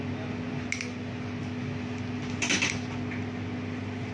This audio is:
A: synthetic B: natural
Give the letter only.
B